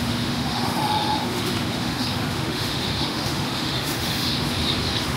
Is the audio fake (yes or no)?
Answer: yes